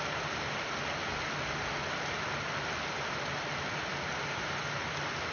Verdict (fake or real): real